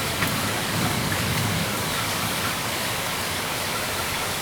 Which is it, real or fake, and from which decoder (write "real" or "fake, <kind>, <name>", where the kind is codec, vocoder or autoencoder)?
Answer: fake, codec, DAC